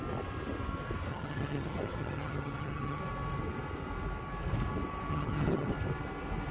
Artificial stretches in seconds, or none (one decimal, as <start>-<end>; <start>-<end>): 1.1-3.0; 5.1-5.7

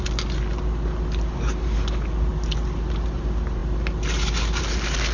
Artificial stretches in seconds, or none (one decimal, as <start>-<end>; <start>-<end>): none

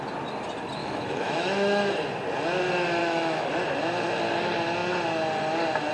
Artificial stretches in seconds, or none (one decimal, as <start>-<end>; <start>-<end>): 0.8-1.8; 3.0-3.5

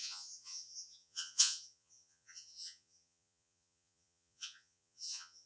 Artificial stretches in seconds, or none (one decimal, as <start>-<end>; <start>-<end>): 0.0-5.5

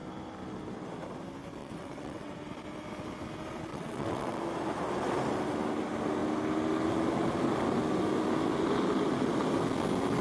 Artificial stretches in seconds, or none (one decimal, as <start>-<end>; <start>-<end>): 1.6-2.3; 3.7-4.4

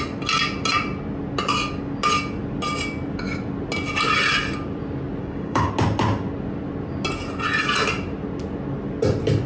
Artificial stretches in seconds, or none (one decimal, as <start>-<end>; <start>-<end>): 5.2-5.7